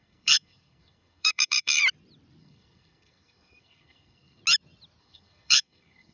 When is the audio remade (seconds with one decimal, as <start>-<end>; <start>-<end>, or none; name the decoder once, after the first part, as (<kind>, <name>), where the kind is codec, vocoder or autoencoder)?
0.0-1.8 (codec, SNAC); 2.4-4.4; 5.0-6.1